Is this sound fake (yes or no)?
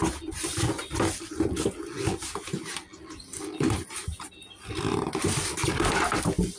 no